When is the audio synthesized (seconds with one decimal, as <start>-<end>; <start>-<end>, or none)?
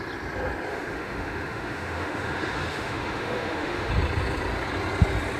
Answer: 0.7-3.9